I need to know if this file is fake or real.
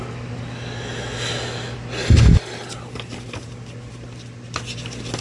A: real